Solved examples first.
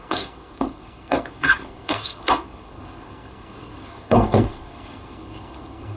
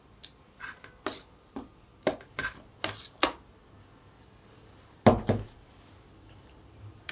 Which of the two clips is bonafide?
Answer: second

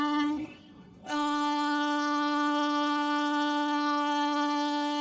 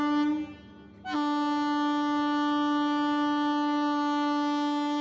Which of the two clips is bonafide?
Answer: second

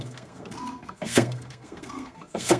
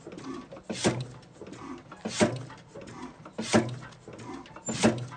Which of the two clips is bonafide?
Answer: second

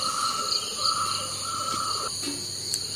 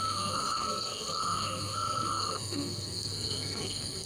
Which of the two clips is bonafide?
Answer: first